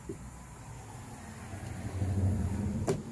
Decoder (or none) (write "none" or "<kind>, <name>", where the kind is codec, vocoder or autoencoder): none